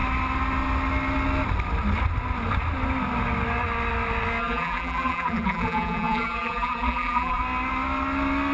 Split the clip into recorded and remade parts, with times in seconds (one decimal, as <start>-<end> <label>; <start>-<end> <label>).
0.0-4.4 recorded; 4.4-7.4 remade; 7.4-8.5 recorded